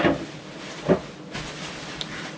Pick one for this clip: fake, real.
real